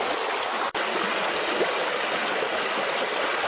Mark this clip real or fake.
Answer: real